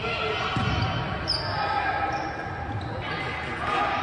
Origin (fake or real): real